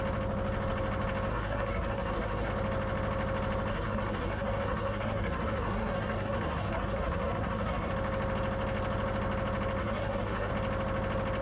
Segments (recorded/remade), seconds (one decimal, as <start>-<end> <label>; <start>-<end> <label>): 0.0-1.3 recorded; 1.3-2.5 remade; 2.5-3.7 recorded; 3.7-7.9 remade; 7.9-9.8 recorded; 9.8-10.5 remade; 10.5-11.4 recorded